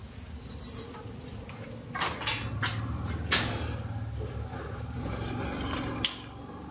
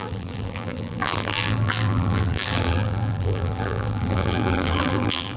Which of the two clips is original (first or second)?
first